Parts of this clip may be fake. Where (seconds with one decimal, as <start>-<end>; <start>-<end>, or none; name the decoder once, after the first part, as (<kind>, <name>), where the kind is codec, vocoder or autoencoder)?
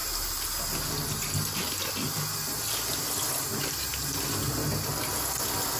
none